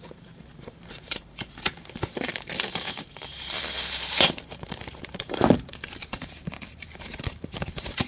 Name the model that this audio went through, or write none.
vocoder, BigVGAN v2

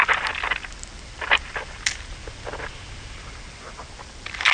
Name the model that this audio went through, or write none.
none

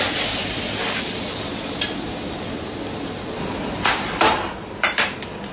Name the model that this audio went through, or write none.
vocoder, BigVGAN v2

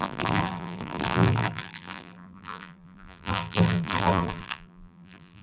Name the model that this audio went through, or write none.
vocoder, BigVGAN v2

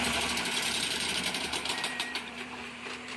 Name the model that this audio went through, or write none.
vocoder, BigVGAN v2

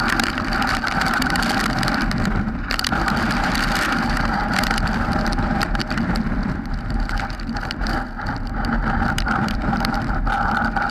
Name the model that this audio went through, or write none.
vocoder, BigVGAN v2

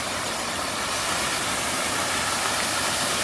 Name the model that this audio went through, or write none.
none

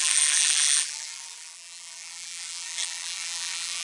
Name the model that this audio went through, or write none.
vocoder, BigVGAN v2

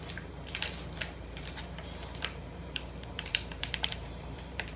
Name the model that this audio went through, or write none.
vocoder, BigVGAN v2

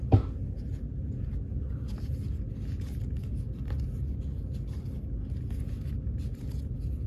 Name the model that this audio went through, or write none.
none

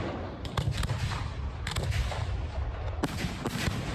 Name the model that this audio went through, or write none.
none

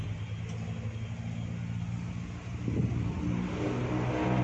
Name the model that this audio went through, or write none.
none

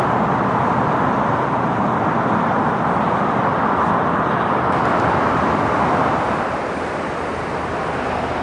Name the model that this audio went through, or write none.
vocoder, BigVGAN v2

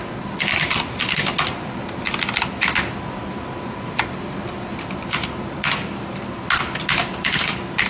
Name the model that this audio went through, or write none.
none